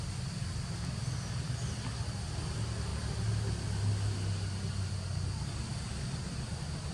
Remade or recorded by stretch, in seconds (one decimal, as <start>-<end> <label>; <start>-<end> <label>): 0.0-6.9 recorded